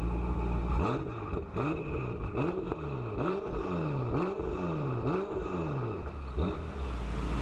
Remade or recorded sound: recorded